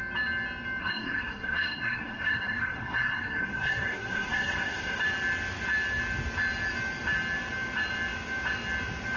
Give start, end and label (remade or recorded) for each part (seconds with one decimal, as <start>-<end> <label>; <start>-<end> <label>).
0.0-0.8 recorded; 0.8-5.0 remade; 5.0-9.2 recorded